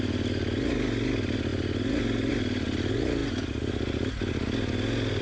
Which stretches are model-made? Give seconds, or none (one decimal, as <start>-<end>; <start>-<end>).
none